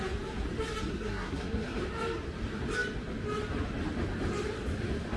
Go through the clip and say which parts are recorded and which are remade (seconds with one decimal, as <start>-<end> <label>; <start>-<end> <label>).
0.0-0.9 recorded; 0.9-1.8 remade; 1.8-5.2 recorded